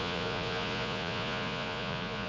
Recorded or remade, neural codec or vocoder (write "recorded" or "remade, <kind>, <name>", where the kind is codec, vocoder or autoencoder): remade, vocoder, Vocos